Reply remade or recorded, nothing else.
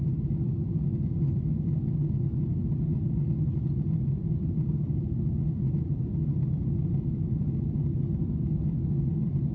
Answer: recorded